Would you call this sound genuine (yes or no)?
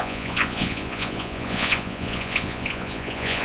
no